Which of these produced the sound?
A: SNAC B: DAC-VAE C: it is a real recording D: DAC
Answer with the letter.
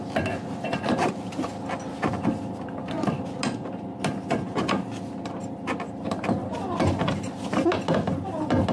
C